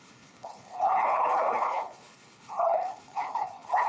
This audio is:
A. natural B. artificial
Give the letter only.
B